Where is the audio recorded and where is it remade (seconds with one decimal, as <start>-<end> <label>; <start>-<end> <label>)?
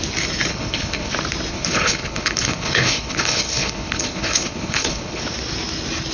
0.0-0.5 recorded; 0.5-1.1 remade; 1.1-1.5 recorded; 1.5-5.2 remade; 5.2-6.1 recorded